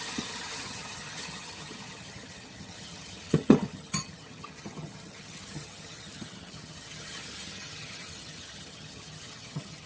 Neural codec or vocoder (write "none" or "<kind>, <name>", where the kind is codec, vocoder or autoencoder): vocoder, HiFi-GAN